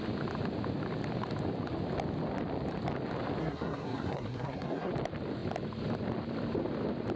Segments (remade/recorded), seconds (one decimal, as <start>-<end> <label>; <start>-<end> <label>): 0.0-3.4 recorded; 3.4-4.9 remade; 4.9-7.2 recorded